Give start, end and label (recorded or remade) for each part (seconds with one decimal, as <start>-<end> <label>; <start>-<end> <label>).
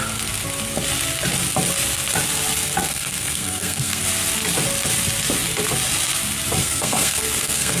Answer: 0.0-2.9 recorded; 2.9-4.0 remade; 4.0-6.6 recorded; 6.6-7.8 remade